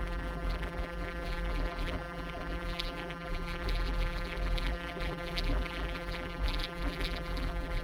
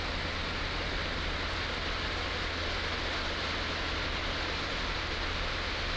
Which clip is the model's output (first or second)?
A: first